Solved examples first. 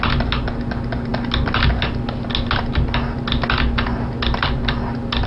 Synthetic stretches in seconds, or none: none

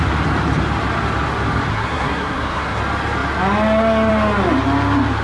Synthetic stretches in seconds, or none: 1.7-2.8

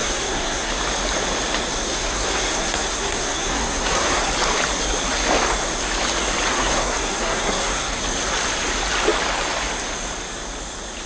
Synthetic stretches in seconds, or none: 0.0-0.7; 1.9-4.3; 6.5-8.0

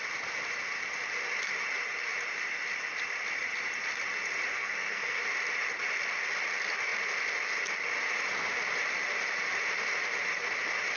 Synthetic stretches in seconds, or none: 4.5-5.2

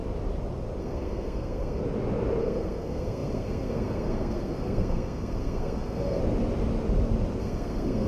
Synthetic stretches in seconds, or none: 0.8-1.8; 2.4-6.2; 7.4-8.1